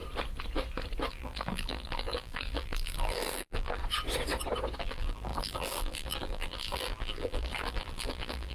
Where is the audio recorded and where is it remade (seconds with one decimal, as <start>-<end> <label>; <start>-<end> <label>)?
0.0-1.1 recorded; 1.1-3.8 remade; 3.8-4.8 recorded; 4.8-8.5 remade